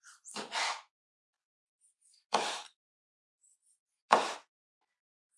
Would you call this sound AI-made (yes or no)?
no